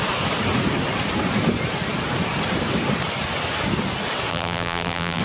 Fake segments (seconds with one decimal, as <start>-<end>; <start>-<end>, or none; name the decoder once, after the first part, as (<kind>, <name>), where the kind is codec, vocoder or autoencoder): 4.3-5.2 (vocoder, BigVGAN v2)